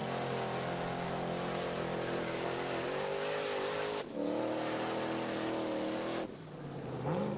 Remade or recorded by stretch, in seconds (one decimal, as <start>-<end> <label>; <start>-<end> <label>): 0.0-7.4 recorded